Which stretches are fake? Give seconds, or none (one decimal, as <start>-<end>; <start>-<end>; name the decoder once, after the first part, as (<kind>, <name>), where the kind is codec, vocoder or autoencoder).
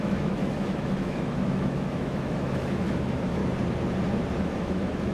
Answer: 0.0-3.4 (autoencoder, DAC-VAE); 4.4-5.1